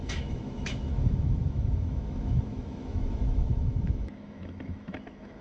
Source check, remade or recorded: remade